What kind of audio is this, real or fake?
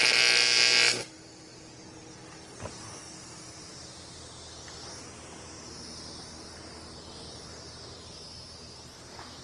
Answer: real